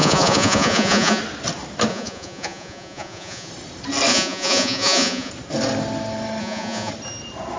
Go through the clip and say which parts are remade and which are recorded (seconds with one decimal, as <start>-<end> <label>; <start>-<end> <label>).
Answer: 0.0-1.2 remade; 1.2-1.9 recorded; 1.9-3.5 remade; 3.5-4.1 recorded; 4.1-5.3 remade; 5.3-6.4 recorded; 6.4-6.9 remade; 6.9-7.6 recorded